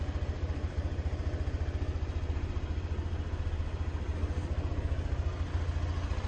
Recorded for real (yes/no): yes